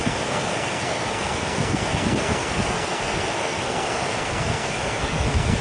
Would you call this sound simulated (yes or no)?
yes